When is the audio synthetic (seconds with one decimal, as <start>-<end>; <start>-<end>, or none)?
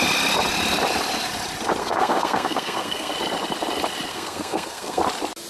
1.8-3.1; 4.1-5.0